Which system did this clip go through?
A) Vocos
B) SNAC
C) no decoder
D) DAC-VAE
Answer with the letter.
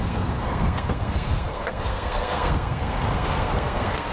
B